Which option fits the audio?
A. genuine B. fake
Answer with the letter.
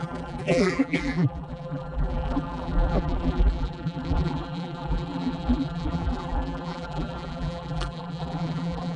B